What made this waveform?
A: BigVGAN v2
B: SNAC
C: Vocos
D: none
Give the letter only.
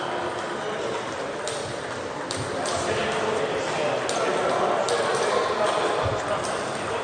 D